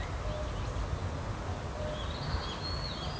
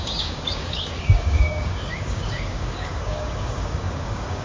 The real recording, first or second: first